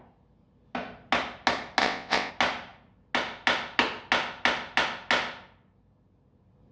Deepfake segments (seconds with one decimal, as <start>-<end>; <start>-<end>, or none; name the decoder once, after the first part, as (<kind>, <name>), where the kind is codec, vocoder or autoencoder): 1.8-2.3 (vocoder, WaveNeXt)